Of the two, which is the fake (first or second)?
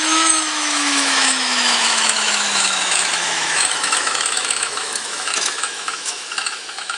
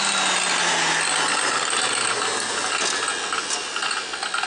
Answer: first